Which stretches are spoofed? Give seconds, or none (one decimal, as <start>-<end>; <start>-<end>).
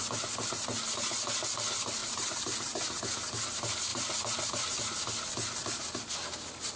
2.0-3.0; 3.9-4.8